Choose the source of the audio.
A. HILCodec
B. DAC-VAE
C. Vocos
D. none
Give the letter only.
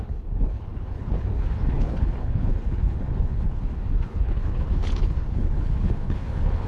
A